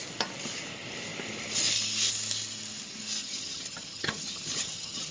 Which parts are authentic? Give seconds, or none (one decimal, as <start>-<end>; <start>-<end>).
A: 0.0-3.2